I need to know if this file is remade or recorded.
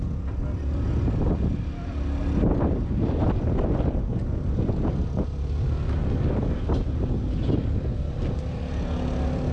recorded